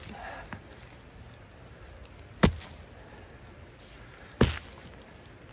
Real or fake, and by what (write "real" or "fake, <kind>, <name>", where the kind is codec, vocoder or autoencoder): real